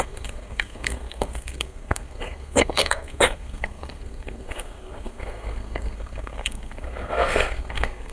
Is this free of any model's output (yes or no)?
no